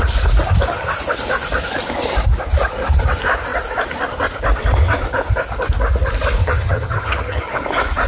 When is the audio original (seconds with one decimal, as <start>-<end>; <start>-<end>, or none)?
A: 0.0-6.4; 7.4-8.1